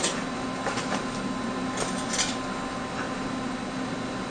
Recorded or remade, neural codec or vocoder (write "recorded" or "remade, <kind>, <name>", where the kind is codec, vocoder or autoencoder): recorded